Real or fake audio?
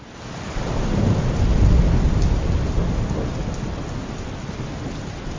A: real